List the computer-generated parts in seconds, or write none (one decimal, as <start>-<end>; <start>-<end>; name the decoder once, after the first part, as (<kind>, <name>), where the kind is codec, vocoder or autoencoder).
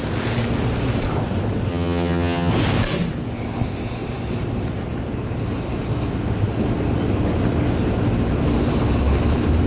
1.7-2.5 (vocoder, HiFi-GAN)